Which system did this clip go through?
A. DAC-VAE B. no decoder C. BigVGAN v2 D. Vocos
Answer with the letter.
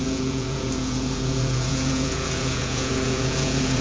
D